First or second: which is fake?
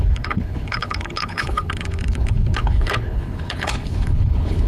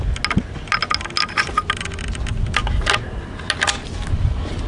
first